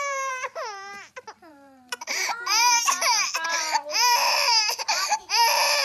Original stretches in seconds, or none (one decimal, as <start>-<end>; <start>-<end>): none